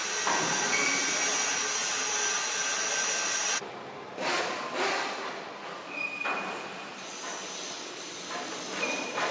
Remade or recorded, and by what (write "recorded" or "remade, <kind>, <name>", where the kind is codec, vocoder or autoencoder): recorded